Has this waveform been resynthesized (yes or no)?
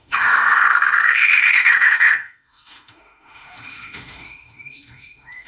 yes